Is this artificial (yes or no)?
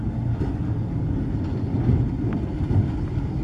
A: no